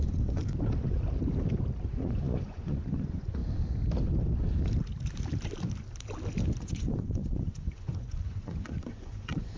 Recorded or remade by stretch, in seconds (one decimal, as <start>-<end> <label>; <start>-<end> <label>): 0.0-0.4 remade; 0.4-1.9 recorded; 1.9-3.4 remade; 3.4-6.6 recorded; 6.6-9.6 remade